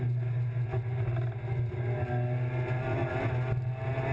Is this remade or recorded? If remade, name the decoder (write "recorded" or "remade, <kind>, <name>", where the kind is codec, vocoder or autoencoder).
recorded